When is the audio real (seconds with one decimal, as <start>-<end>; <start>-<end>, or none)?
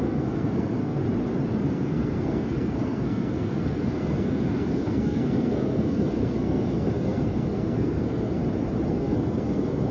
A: 1.0-1.6; 8.4-8.9